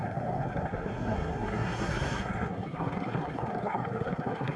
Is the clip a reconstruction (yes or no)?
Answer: yes